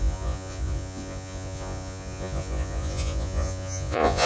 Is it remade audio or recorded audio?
remade